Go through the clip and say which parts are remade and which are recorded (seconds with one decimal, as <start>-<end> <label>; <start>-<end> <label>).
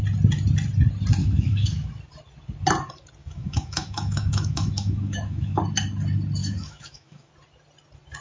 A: 0.0-1.2 recorded; 1.2-1.9 remade; 1.9-3.2 recorded; 3.2-5.6 remade; 5.6-6.4 recorded; 6.4-7.3 remade; 7.3-8.2 recorded